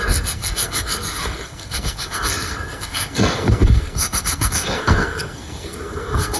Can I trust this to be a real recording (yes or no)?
no